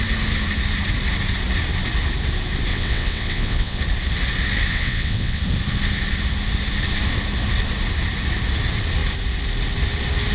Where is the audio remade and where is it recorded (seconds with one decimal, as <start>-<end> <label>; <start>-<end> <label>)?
0.0-2.7 recorded; 2.7-3.8 remade; 3.8-4.7 recorded; 4.7-5.4 remade; 5.4-10.3 recorded